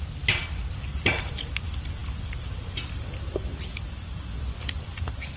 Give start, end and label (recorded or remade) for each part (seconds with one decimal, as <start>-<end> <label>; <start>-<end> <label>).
0.0-5.4 recorded